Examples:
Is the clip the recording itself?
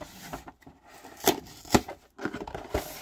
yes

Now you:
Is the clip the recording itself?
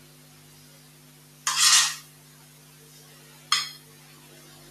yes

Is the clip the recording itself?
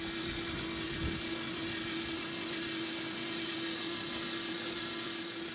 yes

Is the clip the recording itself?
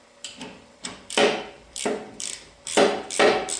no